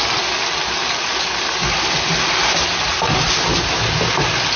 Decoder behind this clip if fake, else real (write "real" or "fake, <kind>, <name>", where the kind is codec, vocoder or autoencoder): real